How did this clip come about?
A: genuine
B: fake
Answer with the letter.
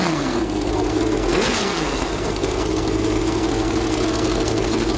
B